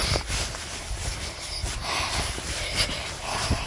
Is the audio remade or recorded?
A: recorded